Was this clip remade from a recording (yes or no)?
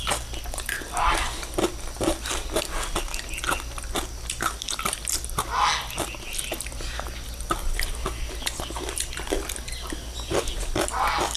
no